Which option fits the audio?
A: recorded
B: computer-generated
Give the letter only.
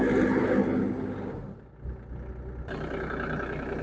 A